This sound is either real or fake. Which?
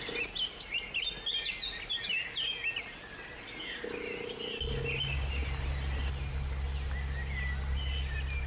real